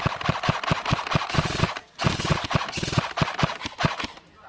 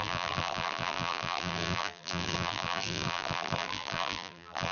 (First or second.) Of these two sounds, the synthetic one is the second